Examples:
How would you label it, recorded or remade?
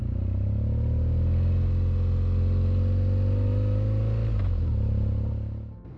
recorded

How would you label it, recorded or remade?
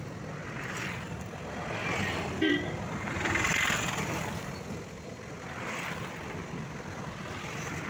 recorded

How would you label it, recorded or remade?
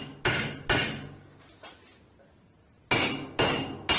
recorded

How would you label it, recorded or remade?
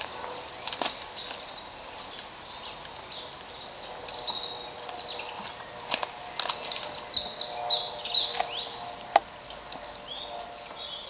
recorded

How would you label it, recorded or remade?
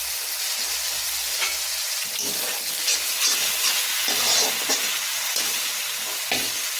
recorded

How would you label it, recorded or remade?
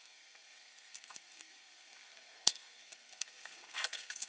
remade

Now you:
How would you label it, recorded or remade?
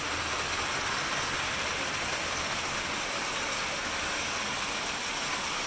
recorded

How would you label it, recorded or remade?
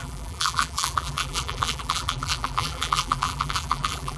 remade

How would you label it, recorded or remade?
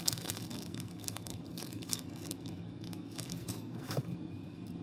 remade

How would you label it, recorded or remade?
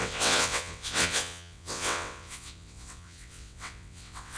remade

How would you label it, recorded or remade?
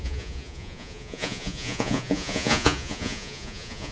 remade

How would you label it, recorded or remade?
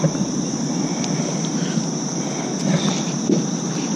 recorded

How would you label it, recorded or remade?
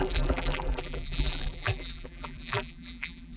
remade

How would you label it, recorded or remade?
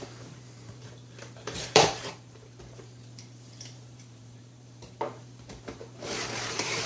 remade